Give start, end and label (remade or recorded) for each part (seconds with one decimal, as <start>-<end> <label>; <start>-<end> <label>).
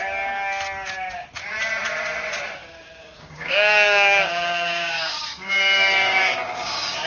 0.0-2.6 recorded; 2.6-7.1 remade